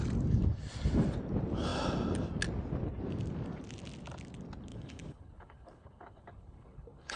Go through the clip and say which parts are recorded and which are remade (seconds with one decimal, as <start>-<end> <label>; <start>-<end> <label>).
0.0-4.7 recorded; 4.7-7.2 remade